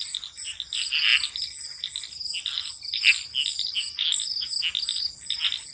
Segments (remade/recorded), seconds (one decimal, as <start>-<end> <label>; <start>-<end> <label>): 0.0-5.7 recorded